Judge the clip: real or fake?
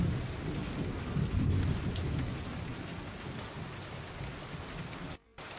real